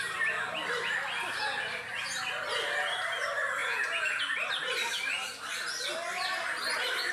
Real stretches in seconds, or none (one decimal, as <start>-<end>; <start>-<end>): 0.0-3.6; 4.2-7.1